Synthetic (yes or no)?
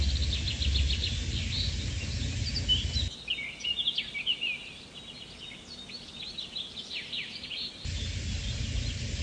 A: no